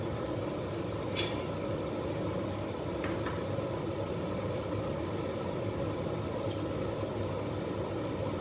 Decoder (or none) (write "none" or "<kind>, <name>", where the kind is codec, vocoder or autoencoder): none